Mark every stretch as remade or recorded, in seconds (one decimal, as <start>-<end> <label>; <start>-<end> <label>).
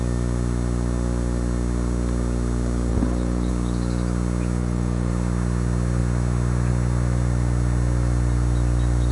0.0-2.9 recorded; 2.9-3.5 remade; 3.5-4.6 recorded; 4.6-5.1 remade; 5.1-9.1 recorded